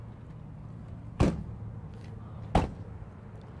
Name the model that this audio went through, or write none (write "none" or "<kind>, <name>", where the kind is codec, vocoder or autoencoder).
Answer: none